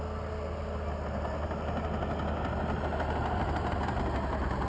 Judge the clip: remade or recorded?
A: recorded